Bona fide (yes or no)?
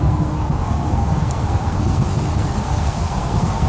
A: no